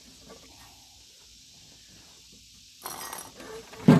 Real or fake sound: real